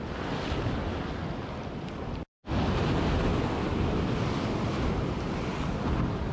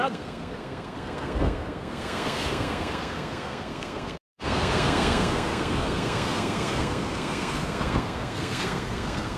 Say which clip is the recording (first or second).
first